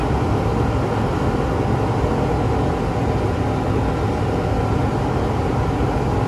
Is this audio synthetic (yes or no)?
no